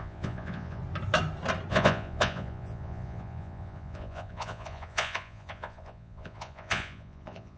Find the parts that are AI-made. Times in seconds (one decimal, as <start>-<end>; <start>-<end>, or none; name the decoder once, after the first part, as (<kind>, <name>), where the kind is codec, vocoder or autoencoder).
0.0-0.8 (vocoder, Vocos); 1.7-7.6